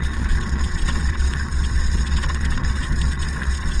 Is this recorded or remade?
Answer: remade